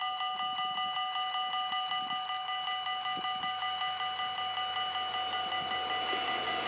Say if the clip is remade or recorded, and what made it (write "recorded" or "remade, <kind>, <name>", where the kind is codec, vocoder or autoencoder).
recorded